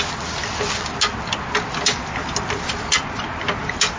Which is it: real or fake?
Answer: real